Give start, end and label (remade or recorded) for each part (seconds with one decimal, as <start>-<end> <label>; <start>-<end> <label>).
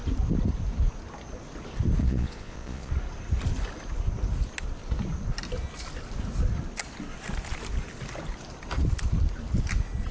0.0-2.0 recorded; 2.0-2.9 remade; 2.9-10.1 recorded